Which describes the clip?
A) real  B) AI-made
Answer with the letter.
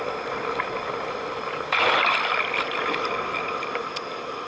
A